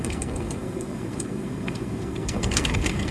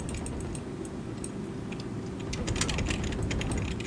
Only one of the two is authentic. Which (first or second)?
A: second